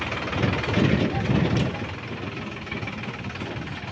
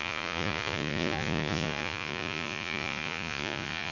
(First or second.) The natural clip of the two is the first